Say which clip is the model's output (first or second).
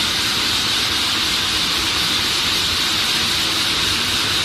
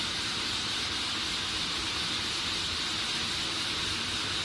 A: first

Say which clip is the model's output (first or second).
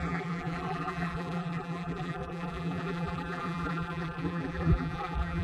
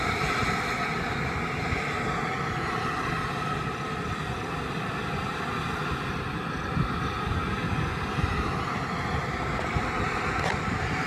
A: first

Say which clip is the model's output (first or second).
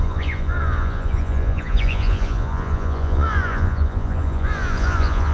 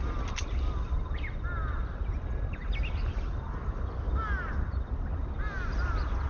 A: first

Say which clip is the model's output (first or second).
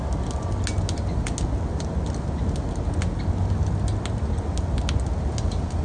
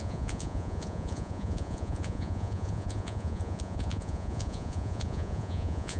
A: second